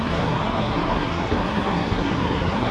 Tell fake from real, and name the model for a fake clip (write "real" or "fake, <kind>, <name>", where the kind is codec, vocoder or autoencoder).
fake, codec, SNAC